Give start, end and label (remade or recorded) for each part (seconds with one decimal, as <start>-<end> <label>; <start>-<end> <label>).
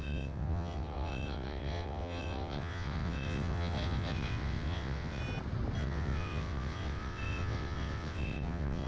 0.0-5.2 remade; 5.2-5.8 recorded; 5.8-8.9 remade